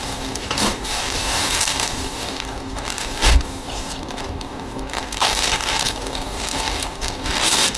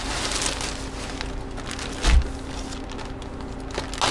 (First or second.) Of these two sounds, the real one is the second